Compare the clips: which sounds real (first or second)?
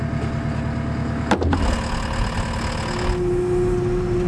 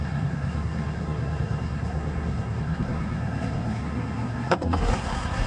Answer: first